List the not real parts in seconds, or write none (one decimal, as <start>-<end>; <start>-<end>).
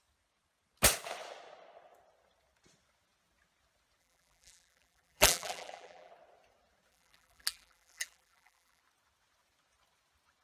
4.0-6.1; 6.9-8.8